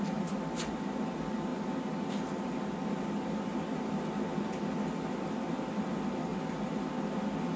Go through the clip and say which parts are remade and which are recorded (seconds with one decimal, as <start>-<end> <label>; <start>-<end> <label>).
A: 0.0-7.6 recorded